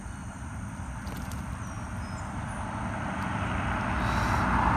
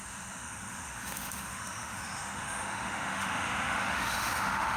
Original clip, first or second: first